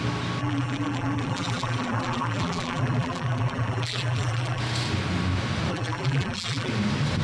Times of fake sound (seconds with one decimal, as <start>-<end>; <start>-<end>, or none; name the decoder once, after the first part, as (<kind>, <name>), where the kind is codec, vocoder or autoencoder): 0.4-4.6 (vocoder, BigVGAN v2); 5.7-6.7